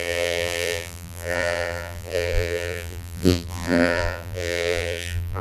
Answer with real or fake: fake